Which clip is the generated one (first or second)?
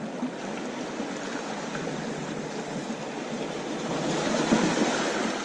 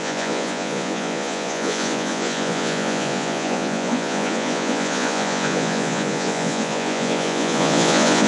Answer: second